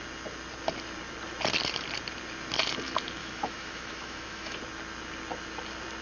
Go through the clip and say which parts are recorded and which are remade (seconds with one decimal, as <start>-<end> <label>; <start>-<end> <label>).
0.0-3.2 recorded; 3.2-4.6 remade; 4.6-6.0 recorded